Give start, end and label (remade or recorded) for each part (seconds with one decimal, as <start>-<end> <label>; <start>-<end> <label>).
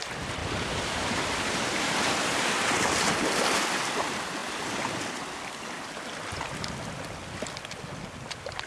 0.0-0.4 recorded; 0.4-2.7 remade; 2.7-8.7 recorded